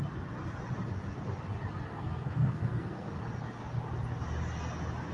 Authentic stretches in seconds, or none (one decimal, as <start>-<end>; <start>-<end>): 0.0-1.9; 3.2-5.1